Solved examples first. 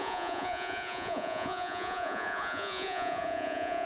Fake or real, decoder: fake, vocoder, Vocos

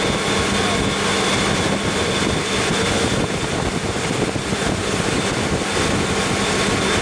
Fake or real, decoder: real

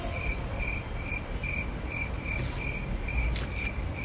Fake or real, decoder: fake, vocoder, BigVGAN v2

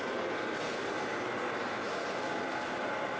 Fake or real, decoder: real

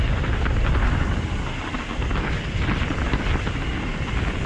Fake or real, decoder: real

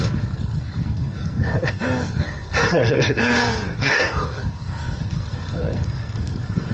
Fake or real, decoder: fake, codec, SNAC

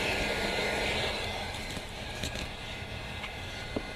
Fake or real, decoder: fake, vocoder, BigVGAN v2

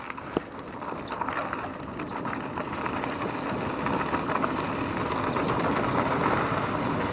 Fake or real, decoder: real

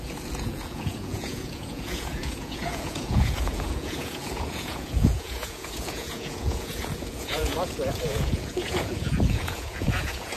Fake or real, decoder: fake, vocoder, Vocos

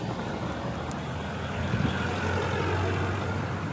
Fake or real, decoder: real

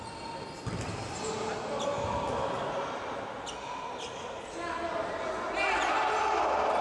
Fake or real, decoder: real